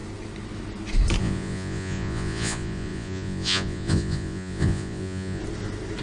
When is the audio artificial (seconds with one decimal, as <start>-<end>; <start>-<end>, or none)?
1.2-5.4